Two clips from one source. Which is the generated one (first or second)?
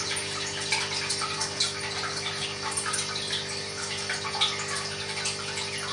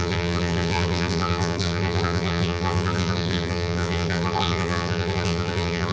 second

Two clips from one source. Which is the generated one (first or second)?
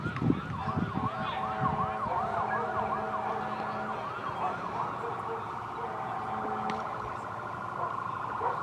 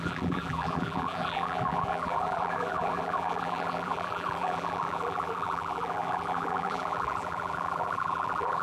second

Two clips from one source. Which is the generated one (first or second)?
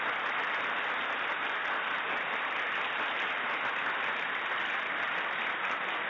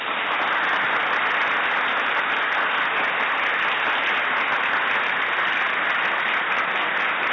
first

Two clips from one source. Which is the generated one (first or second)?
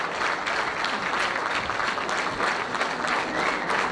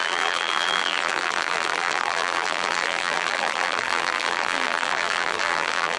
second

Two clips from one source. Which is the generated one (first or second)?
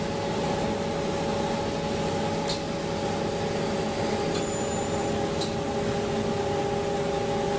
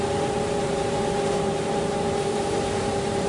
second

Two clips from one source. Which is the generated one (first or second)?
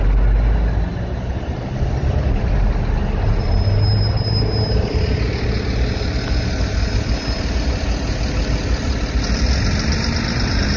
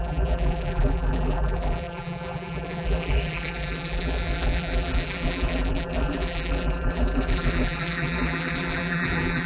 second